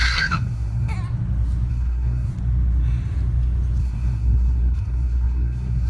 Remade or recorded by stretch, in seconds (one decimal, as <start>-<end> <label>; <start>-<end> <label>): 0.0-0.9 remade; 0.9-1.7 recorded; 1.7-2.3 remade; 2.3-3.8 recorded; 3.8-5.9 remade

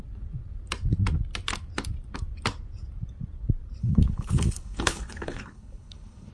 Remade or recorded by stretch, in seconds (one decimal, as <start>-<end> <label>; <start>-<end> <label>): 0.0-3.8 recorded; 3.8-6.3 remade

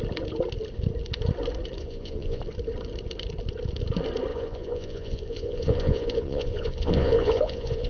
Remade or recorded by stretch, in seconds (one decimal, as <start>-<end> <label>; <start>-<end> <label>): 0.0-1.8 recorded; 1.8-2.4 remade; 2.4-4.3 recorded; 4.3-7.9 remade

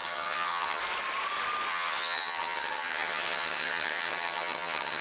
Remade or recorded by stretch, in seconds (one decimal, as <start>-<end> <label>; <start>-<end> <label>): 0.0-0.8 remade; 0.8-1.7 recorded; 1.7-5.0 remade